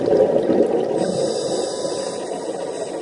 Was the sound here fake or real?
real